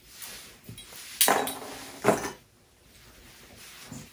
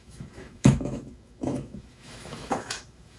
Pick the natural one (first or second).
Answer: first